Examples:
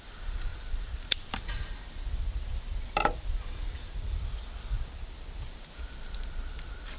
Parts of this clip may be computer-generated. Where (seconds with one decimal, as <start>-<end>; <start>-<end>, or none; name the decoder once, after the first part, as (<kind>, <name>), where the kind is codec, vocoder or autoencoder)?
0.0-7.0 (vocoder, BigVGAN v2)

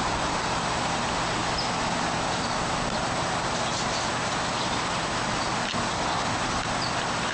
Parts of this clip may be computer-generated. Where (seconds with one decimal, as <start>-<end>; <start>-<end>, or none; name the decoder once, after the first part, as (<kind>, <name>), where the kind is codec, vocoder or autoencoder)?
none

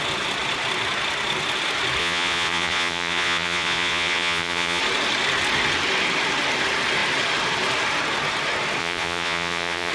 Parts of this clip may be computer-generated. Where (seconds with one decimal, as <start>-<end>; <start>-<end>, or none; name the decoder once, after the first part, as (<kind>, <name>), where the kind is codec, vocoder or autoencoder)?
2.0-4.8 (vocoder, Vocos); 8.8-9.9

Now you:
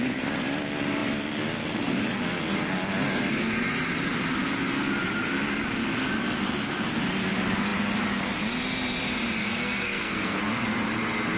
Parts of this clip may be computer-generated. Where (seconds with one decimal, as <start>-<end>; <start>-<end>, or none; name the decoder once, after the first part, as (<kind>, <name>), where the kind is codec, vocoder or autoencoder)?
9.4-10.4 (codec, SNAC)